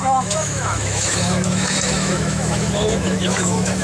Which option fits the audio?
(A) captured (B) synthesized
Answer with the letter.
B